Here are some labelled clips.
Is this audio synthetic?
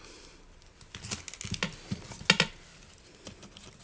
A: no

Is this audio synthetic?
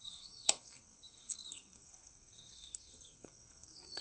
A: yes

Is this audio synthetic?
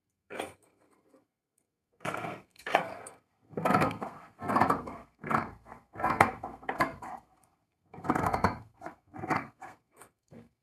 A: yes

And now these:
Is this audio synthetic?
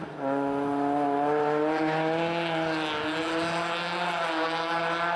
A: no